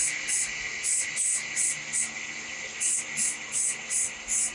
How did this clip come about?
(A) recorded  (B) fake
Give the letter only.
A